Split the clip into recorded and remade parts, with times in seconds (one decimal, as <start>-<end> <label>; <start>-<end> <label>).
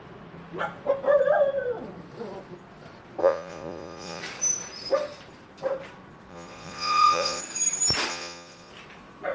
0.0-3.2 recorded; 3.2-4.2 remade; 4.2-6.3 recorded; 6.3-7.4 remade; 7.4-8.1 recorded; 8.1-8.7 remade; 8.7-9.3 recorded